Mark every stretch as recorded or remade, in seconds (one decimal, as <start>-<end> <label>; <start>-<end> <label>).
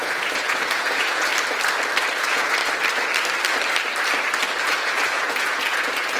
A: 0.0-1.3 remade; 1.3-2.2 recorded; 2.2-2.6 remade; 2.6-4.6 recorded; 4.6-6.2 remade